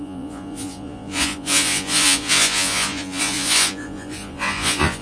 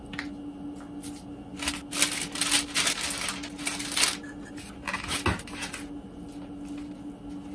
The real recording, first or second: second